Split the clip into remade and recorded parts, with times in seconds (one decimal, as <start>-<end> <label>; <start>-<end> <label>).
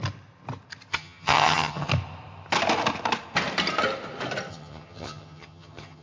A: 0.0-0.9 recorded; 0.9-1.9 remade; 1.9-4.5 recorded; 4.5-6.0 remade